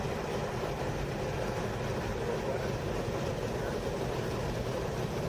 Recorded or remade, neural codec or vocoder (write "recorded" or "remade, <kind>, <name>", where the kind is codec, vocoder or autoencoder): recorded